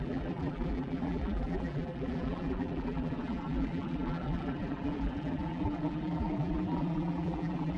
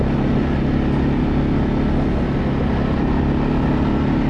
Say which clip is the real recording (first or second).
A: second